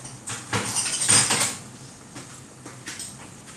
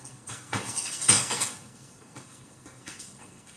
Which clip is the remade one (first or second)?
second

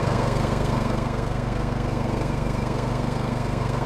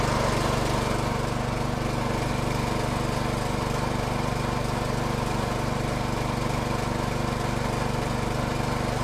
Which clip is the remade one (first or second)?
first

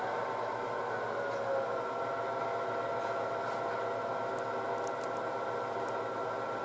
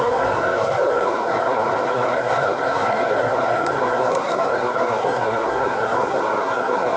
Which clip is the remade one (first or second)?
second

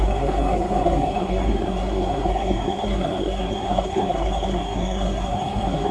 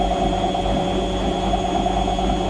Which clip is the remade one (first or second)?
first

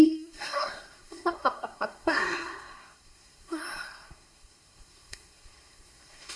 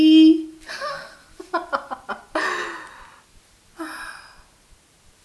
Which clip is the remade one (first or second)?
first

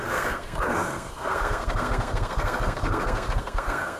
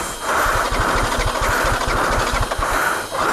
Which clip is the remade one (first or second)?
first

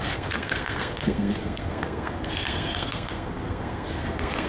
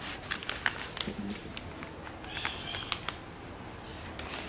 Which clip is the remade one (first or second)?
first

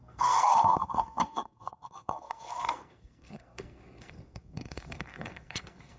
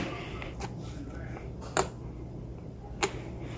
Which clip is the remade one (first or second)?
first